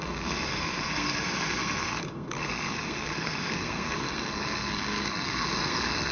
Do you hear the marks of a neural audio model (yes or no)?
yes